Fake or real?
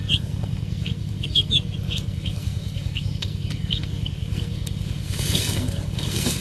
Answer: fake